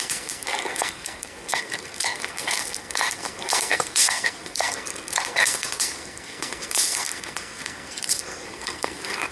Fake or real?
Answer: fake